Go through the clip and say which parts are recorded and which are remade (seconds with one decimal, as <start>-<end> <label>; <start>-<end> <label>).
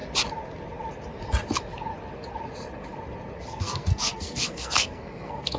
0.0-3.4 recorded; 3.4-5.6 remade